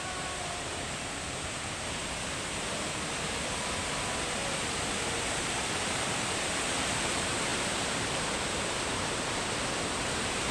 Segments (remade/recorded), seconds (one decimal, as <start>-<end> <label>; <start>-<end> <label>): 0.0-2.0 remade; 2.0-5.6 recorded; 5.6-10.5 remade